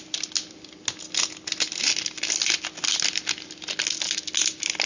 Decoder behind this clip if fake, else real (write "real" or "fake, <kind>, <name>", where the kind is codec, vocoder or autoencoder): real